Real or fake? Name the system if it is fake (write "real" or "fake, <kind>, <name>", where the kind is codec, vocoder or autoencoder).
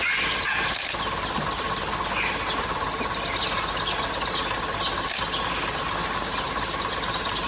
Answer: real